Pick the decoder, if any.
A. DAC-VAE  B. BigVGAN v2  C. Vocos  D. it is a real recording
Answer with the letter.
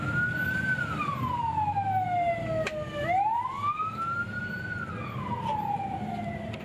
D